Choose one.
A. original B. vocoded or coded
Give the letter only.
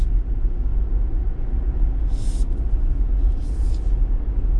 A